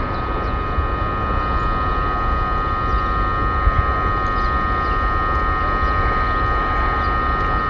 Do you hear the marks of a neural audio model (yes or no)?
no